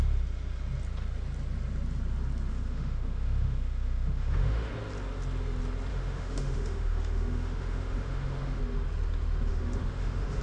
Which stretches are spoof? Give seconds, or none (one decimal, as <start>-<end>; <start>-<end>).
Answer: 2.5-4.7; 5.9-8.6; 9.5-10.4